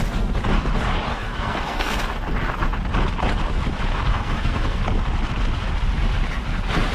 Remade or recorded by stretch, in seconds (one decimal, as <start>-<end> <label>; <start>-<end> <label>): 0.0-1.1 recorded; 1.1-2.0 remade; 2.0-4.1 recorded; 4.1-4.8 remade; 4.8-6.9 recorded